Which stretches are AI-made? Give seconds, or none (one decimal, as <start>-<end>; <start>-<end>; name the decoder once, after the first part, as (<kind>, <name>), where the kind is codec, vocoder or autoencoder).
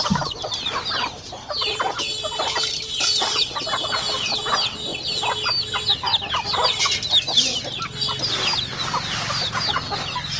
none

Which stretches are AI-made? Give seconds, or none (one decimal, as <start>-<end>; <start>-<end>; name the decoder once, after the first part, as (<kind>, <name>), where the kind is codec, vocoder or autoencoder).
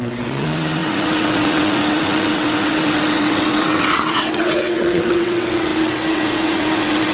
0.0-7.1 (vocoder, WaveNeXt)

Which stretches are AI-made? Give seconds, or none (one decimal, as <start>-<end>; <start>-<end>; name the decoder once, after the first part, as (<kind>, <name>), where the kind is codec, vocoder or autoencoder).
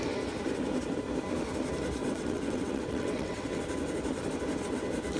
2.0-3.6 (vocoder, WaveNeXt)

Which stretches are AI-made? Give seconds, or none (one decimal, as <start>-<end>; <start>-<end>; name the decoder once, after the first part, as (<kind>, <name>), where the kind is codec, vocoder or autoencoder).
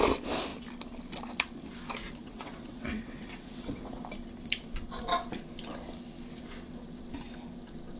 2.2-4.0 (vocoder, WaveNeXt)